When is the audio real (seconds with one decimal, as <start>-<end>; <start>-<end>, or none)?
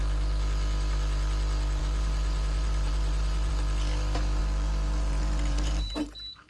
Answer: 0.0-1.8; 3.5-4.4